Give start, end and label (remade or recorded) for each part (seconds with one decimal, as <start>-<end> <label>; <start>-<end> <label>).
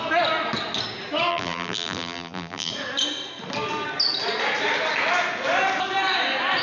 0.0-1.3 recorded; 1.3-2.7 remade; 2.7-6.6 recorded